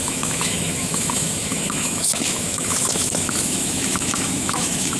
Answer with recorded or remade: remade